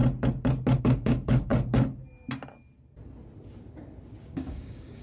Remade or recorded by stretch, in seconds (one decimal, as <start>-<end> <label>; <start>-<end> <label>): 0.0-0.8 recorded; 0.8-1.5 remade; 1.5-4.2 recorded; 4.2-5.0 remade